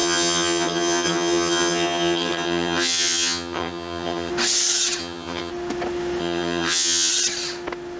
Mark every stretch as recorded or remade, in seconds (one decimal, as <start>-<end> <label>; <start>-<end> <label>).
0.0-4.3 remade; 4.3-5.0 recorded; 5.0-5.5 remade; 5.5-6.2 recorded; 6.2-7.1 remade; 7.1-8.0 recorded